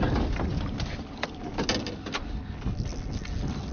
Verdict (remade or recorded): recorded